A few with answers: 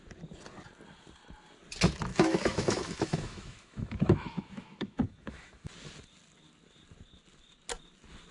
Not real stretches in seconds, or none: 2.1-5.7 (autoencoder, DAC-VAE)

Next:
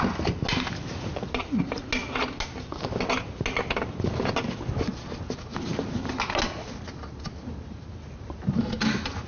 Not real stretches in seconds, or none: none